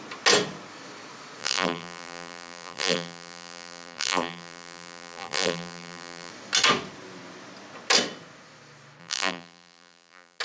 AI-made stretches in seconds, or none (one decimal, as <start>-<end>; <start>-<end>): 1.4-6.3; 9.0-10.4